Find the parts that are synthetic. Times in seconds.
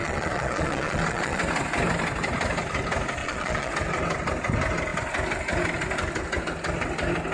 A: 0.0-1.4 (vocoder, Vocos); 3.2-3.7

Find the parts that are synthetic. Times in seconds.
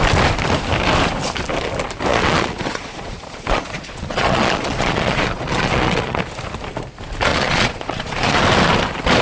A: 2.1-6.2 (vocoder, Vocos); 7.3-8.4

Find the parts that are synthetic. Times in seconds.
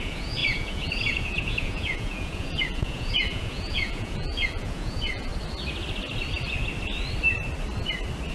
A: 0.0-5.3 (vocoder, Vocos)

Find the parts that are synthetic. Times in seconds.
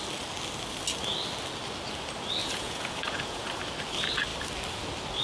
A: 2.4-3.5 (vocoder, Vocos)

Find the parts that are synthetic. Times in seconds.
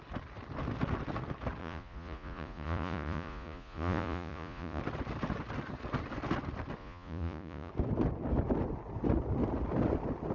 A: 1.6-4.8 (vocoder, Vocos); 6.8-7.7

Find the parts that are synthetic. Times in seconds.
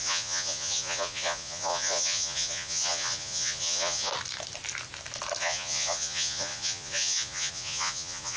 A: 0.0-4.1 (vocoder, Vocos); 5.4-8.4